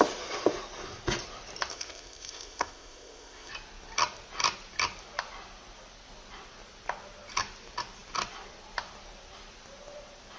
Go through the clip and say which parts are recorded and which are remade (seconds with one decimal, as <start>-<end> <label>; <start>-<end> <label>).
0.0-1.7 recorded; 1.7-3.5 remade; 3.5-10.4 recorded